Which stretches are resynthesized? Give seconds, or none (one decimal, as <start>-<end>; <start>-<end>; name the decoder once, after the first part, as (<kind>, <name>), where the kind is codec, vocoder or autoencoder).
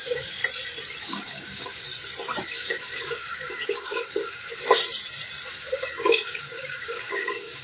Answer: 0.0-0.4 (codec, DAC); 1.0-1.9; 2.4-4.8; 5.5-7.6